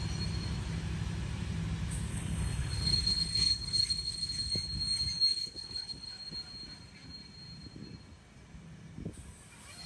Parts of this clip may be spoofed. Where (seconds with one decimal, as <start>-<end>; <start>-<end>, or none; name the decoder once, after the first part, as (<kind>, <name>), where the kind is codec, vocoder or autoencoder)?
2.1-4.5 (codec, HILCodec); 5.3-6.1